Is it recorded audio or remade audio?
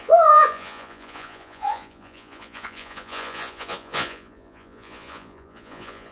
remade